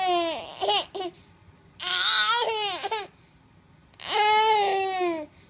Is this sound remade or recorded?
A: recorded